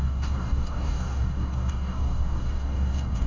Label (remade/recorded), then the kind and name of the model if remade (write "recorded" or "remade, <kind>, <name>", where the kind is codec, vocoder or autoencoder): remade, codec, DAC